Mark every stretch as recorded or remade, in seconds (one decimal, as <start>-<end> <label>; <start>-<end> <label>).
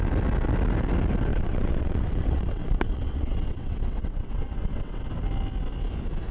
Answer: 0.0-1.3 recorded; 1.3-5.0 remade; 5.0-6.3 recorded